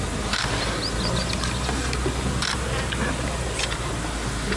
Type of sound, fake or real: real